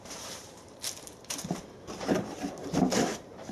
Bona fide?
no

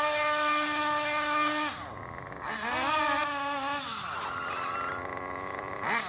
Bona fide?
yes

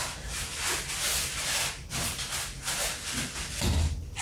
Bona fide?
yes